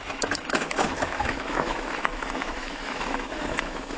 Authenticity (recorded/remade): remade